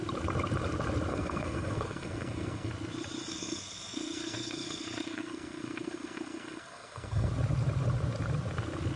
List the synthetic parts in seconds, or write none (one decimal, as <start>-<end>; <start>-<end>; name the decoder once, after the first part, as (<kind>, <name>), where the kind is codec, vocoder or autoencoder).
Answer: 1.1-2.7 (codec, SNAC); 3.3-7.3